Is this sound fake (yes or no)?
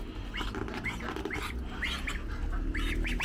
no